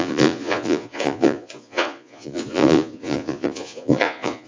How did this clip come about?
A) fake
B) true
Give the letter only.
A